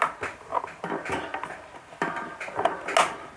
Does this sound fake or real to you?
real